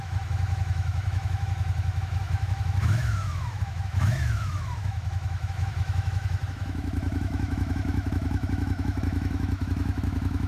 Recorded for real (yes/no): no